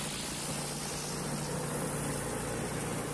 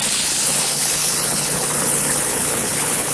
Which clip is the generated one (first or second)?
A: second